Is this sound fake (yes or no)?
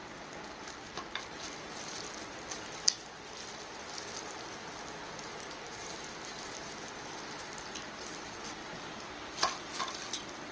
no